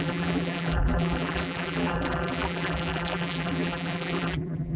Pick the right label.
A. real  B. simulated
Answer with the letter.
B